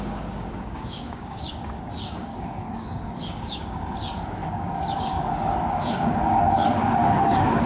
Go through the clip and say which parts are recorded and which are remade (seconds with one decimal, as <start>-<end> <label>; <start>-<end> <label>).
0.0-7.7 remade